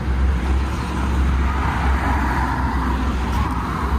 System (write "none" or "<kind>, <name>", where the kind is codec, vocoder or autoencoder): none